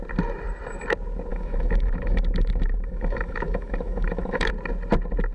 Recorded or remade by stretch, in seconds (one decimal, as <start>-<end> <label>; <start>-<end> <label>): 0.0-1.3 recorded; 1.3-4.5 remade; 4.5-5.3 recorded